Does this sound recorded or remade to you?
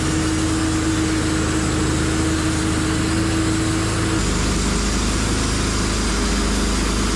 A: recorded